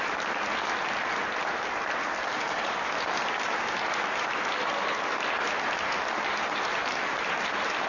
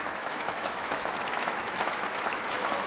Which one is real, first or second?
first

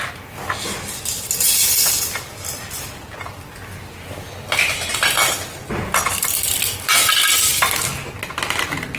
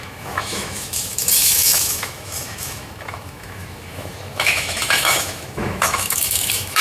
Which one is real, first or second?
first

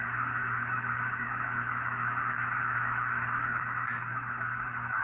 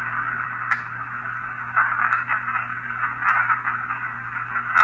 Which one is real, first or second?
second